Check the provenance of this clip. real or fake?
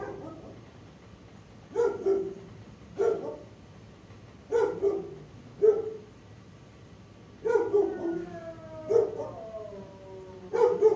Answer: real